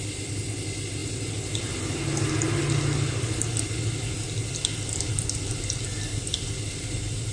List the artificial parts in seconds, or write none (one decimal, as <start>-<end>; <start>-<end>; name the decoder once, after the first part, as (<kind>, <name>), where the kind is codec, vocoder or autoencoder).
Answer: none